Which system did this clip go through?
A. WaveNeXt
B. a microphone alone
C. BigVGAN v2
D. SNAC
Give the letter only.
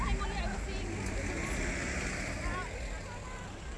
B